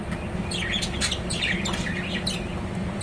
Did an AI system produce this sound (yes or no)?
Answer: no